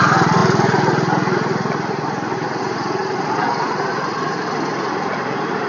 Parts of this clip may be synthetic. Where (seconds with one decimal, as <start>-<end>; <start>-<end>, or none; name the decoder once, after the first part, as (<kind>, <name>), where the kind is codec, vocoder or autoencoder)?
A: none

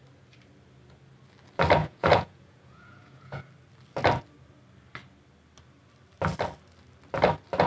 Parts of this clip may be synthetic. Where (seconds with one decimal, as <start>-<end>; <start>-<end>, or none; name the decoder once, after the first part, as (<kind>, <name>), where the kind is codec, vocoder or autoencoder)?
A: 1.8-3.5 (vocoder, Vocos)

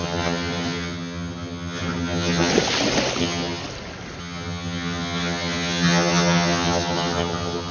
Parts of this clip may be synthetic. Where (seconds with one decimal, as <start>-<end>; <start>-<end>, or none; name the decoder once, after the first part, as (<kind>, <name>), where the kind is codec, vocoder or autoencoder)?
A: 0.0-2.5 (vocoder, HiFi-GAN); 3.2-3.6; 4.2-7.7

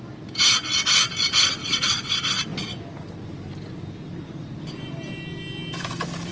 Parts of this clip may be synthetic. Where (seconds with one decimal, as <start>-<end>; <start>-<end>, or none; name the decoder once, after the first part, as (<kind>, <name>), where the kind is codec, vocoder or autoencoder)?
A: 1.6-2.1 (vocoder, WaveNeXt)

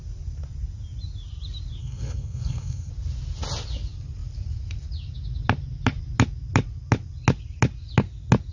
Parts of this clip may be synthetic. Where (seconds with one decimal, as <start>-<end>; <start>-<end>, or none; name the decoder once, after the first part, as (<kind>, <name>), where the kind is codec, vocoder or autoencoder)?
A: 1.8-2.9 (codec, SNAC)

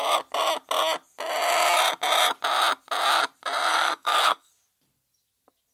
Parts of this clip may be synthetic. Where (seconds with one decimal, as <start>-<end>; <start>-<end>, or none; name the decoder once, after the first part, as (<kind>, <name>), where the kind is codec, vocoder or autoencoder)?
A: 3.7-4.5 (codec, SNAC)